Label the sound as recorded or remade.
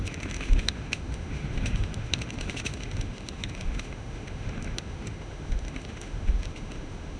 remade